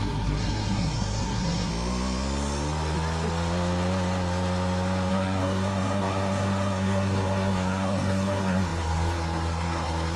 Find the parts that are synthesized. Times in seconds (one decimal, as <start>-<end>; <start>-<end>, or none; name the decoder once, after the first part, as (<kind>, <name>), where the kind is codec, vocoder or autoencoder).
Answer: 0.0-1.7 (codec, SNAC); 5.1-10.2